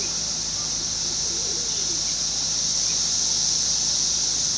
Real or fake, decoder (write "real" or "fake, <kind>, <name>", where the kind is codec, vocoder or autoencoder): real